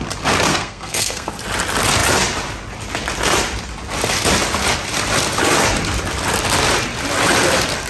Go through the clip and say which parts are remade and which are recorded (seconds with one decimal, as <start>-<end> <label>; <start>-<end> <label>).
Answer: 0.0-0.5 recorded; 0.5-1.3 remade; 1.3-7.9 recorded